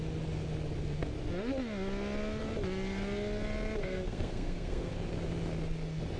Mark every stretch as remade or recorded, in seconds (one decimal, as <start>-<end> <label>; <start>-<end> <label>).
0.0-3.8 recorded; 3.8-4.9 remade; 4.9-6.2 recorded

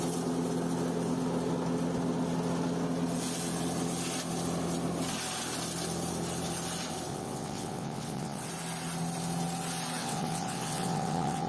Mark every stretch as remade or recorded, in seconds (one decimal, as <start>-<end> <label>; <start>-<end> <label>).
0.0-7.1 recorded; 7.1-8.5 remade; 8.5-10.0 recorded; 10.0-11.5 remade

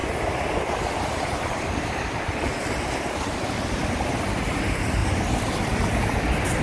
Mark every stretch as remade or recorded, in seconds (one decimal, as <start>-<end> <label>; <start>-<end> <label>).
0.0-2.5 remade; 2.5-6.6 recorded

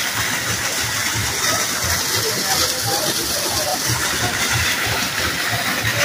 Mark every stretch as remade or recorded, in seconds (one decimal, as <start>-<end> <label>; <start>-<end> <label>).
0.0-3.7 recorded; 3.7-5.0 remade; 5.0-6.0 recorded

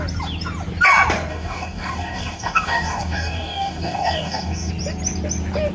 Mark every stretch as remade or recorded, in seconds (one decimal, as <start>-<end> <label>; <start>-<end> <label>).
0.0-1.3 recorded; 1.3-4.7 remade; 4.7-5.7 recorded